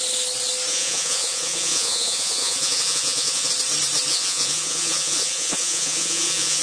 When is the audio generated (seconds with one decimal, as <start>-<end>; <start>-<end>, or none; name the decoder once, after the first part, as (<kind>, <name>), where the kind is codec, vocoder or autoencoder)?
0.7-3.5 (vocoder, Vocos); 4.1-6.6

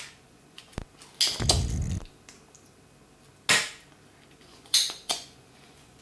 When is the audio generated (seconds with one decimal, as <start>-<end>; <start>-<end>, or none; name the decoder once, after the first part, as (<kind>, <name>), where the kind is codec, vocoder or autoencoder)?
0.0-0.7 (vocoder, Vocos); 4.3-6.0

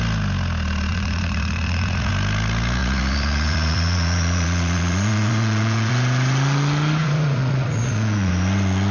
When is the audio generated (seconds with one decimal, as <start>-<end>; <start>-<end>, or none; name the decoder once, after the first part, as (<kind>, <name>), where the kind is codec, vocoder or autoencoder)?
0.9-2.1 (vocoder, Vocos); 2.8-5.9; 7.0-8.3

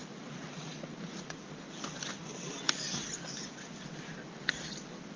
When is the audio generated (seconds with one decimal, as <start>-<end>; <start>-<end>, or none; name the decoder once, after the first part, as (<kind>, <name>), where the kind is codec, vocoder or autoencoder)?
0.0-1.4 (vocoder, Vocos)

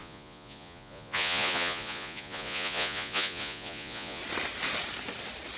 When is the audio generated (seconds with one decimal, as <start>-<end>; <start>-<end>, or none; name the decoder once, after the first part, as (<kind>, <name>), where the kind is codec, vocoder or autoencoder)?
0.0-4.2 (vocoder, Vocos)

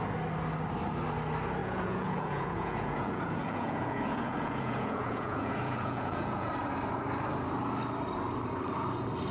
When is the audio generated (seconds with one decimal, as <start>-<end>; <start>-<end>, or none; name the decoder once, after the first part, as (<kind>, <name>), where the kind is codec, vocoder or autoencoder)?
1.6-6.5 (vocoder, Vocos)

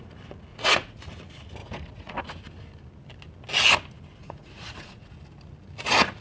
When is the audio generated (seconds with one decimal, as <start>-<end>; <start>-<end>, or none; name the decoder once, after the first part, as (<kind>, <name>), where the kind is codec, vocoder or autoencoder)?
0.5-1.0 (vocoder, Vocos); 1.6-2.2; 4.2-5.1